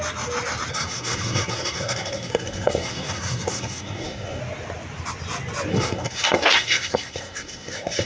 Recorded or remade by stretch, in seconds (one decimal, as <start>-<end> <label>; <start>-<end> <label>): 0.0-0.7 recorded; 0.7-4.4 remade; 4.4-5.7 recorded; 5.7-8.1 remade

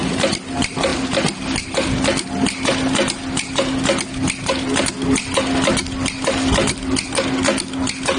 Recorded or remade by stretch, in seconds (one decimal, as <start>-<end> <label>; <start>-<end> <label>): 0.0-8.2 recorded

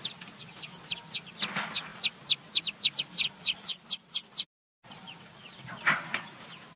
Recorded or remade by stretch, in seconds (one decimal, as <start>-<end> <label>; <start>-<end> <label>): 0.0-6.8 recorded

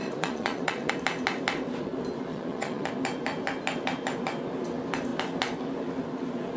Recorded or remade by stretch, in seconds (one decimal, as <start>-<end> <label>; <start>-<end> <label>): 0.0-0.9 remade; 0.9-2.3 recorded; 2.3-2.9 remade; 2.9-6.6 recorded

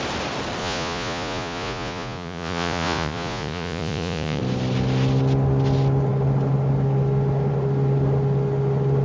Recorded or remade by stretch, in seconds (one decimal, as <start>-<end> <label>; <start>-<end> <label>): 0.0-0.6 recorded; 0.6-4.4 remade; 4.4-9.0 recorded

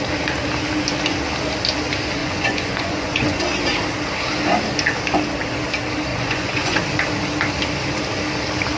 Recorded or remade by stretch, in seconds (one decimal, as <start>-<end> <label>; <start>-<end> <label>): 0.0-2.2 recorded; 2.2-3.4 remade; 3.4-6.1 recorded; 6.1-6.8 remade; 6.8-8.8 recorded